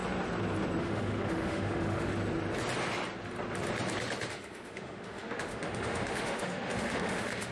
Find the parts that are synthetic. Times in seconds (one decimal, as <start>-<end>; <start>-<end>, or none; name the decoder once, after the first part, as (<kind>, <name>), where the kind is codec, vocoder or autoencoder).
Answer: 0.8-2.1 (autoencoder, DAC-VAE); 4.3-7.5